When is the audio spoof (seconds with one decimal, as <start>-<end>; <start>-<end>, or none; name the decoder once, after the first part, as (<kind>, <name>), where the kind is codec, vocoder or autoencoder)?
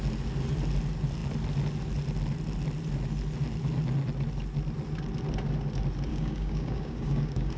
6.1-7.6 (codec, DAC)